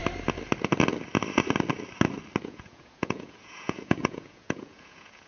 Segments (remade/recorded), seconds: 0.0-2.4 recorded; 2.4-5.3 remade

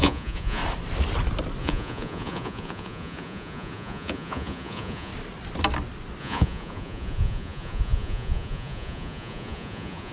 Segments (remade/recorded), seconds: 0.0-0.6 remade; 0.6-1.6 recorded; 1.6-5.1 remade; 5.1-6.2 recorded; 6.2-10.1 remade

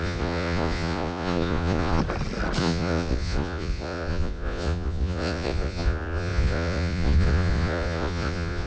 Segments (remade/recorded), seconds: 0.0-2.0 remade; 2.0-2.6 recorded; 2.6-8.7 remade

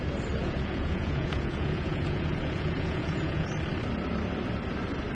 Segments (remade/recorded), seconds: 0.0-0.4 recorded; 0.4-3.5 remade; 3.5-5.1 recorded

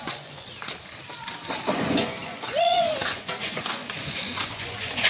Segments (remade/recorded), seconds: 0.0-0.5 remade; 0.5-1.7 recorded; 1.7-5.1 remade

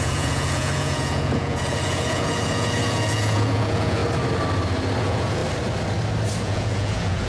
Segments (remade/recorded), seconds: 0.0-4.0 remade; 4.0-5.0 recorded; 5.0-5.4 remade; 5.4-6.4 recorded; 6.4-7.3 remade

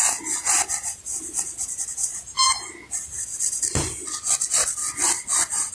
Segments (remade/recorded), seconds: 0.0-5.7 recorded

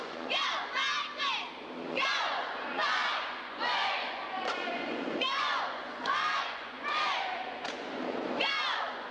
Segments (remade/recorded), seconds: 0.0-0.8 remade; 0.8-1.9 recorded; 1.9-9.1 remade